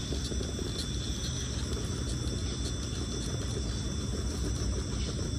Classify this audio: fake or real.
real